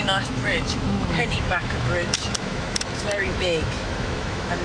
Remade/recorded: remade